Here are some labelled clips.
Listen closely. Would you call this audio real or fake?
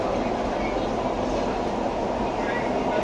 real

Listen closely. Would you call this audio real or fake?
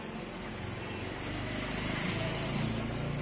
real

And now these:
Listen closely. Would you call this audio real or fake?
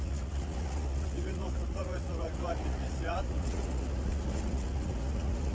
fake